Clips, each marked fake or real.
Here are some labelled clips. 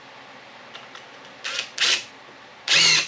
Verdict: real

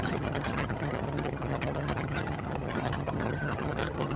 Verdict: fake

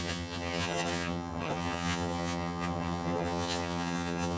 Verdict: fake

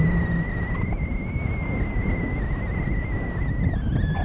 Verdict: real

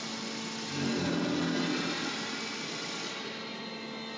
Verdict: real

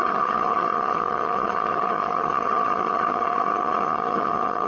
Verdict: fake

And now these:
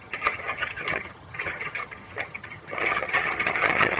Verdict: fake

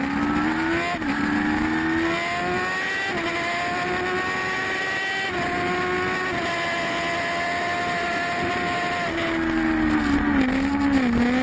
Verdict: real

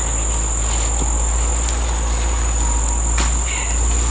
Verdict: real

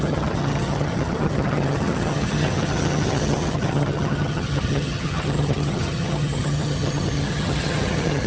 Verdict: fake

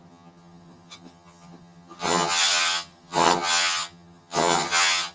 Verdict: fake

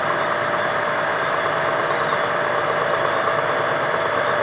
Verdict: real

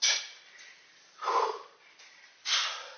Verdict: real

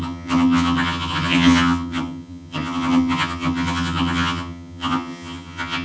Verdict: fake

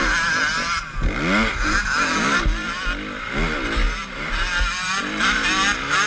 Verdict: real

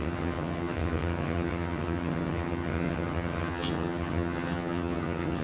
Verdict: fake